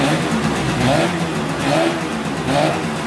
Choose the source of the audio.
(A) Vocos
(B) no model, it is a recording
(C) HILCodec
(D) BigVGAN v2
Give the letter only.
B